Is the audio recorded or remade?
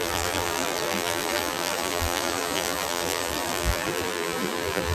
remade